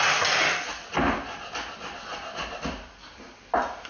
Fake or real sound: real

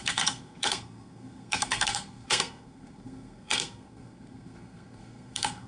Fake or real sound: fake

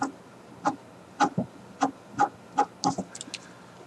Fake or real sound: real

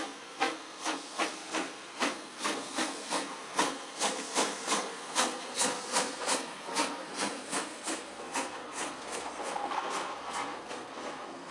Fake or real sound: fake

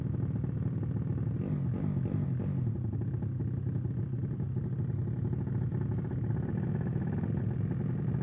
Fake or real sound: real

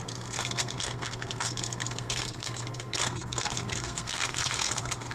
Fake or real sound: fake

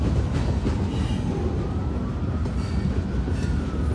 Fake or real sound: real